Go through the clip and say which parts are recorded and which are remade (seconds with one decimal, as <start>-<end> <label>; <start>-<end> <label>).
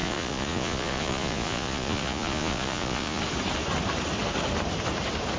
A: 0.0-3.2 remade; 3.2-5.4 recorded